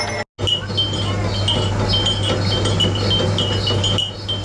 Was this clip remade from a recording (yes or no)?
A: no